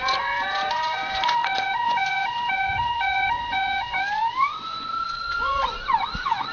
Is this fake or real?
fake